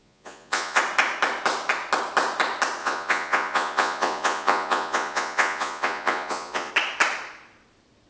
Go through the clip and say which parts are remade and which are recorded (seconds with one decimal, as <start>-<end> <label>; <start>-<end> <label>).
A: 0.0-0.8 remade; 0.8-2.8 recorded; 2.8-6.7 remade; 6.7-8.1 recorded